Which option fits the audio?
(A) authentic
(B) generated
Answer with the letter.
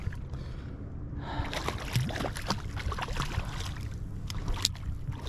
A